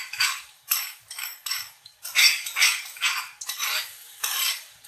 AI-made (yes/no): yes